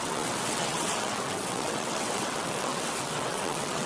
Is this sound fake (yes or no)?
yes